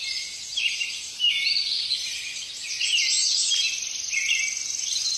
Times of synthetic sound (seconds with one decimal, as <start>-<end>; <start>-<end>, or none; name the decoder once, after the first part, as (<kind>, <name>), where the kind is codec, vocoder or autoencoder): none